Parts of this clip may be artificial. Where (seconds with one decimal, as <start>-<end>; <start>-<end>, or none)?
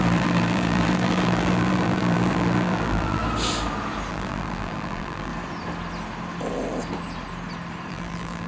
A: 0.0-3.2; 4.1-5.3; 7.9-8.5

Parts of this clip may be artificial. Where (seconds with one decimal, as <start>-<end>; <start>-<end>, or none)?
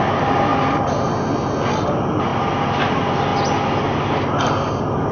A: none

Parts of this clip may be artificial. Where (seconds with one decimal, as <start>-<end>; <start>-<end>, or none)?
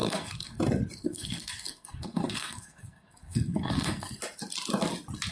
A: 0.0-0.6; 1.0-4.2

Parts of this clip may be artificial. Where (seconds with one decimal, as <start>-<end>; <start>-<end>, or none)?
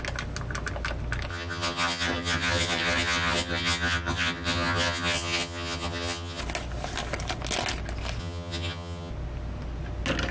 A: 1.3-6.4; 8.2-9.1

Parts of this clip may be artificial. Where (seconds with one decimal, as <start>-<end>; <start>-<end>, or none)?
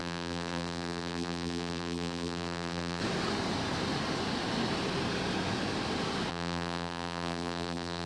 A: 0.0-3.0; 6.3-8.1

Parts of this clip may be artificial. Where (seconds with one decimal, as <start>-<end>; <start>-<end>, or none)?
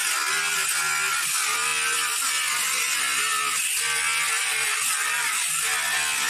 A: 4.4-5.7